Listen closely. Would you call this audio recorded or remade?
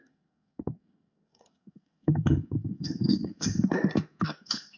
remade